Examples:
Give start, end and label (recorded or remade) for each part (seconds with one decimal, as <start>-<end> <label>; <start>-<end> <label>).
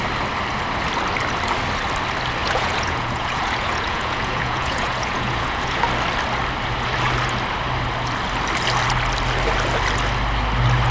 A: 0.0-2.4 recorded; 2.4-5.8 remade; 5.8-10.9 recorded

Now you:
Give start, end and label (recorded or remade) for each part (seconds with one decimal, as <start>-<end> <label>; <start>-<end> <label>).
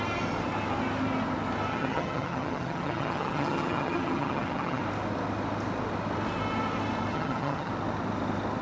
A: 0.0-1.7 recorded; 1.7-4.8 remade; 4.8-7.1 recorded; 7.1-7.7 remade; 7.7-8.6 recorded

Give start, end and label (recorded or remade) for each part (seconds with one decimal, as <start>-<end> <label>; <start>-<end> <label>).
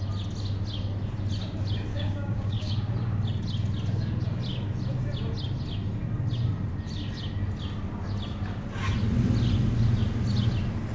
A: 0.0-1.9 recorded; 1.9-2.7 remade; 2.7-10.9 recorded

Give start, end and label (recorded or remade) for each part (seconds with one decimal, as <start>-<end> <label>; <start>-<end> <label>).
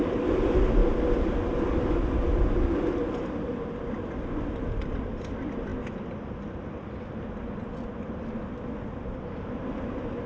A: 0.0-10.3 recorded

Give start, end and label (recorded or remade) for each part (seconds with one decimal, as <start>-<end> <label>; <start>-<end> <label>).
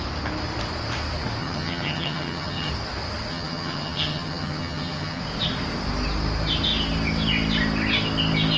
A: 0.0-1.4 recorded; 1.4-2.7 remade; 2.7-3.3 recorded; 3.3-5.2 remade; 5.2-8.6 recorded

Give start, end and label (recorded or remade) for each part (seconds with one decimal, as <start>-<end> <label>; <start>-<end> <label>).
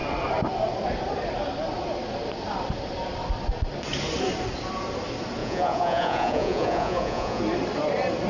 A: 0.0-5.4 recorded; 5.4-7.4 remade; 7.4-8.3 recorded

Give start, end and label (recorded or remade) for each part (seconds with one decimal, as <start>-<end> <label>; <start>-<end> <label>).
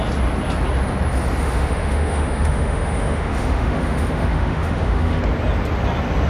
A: 0.0-1.4 recorded; 1.4-5.2 remade; 5.2-6.3 recorded